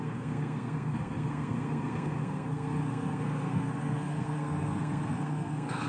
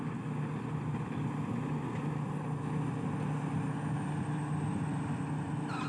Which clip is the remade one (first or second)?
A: first